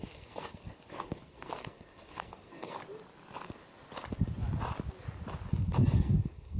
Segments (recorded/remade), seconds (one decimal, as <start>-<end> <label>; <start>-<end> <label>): 0.0-2.8 remade; 2.8-5.5 recorded; 5.5-6.6 remade